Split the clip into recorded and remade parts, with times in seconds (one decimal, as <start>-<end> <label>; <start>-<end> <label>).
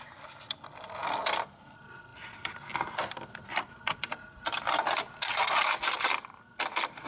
0.0-7.1 recorded